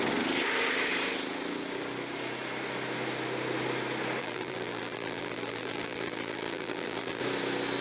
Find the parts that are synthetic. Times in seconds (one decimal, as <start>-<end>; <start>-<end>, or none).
4.2-7.2